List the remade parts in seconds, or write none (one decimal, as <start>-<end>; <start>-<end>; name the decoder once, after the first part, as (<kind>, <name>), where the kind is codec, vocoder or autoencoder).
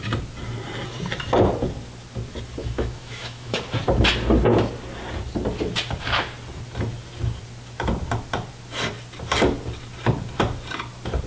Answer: 2.6-3.6 (autoencoder, DAC-VAE)